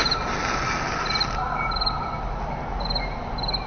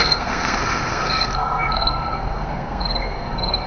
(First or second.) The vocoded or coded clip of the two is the second